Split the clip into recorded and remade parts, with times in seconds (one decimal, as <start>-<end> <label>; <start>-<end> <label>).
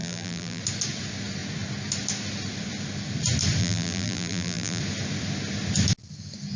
0.0-0.6 remade; 0.6-3.6 recorded; 3.6-4.8 remade; 4.8-6.6 recorded